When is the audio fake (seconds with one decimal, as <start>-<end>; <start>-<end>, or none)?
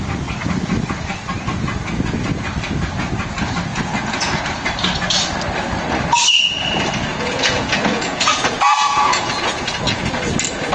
3.7-4.4; 7.1-10.0